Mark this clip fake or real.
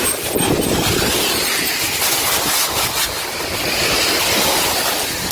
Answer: real